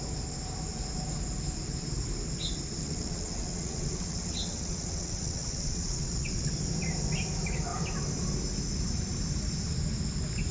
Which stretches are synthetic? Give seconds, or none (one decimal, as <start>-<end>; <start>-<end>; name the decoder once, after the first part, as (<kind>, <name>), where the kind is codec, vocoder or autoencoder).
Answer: 2.8-6.5 (vocoder, WaveNeXt)